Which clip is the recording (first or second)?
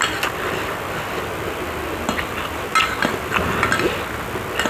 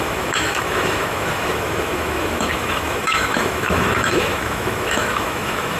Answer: first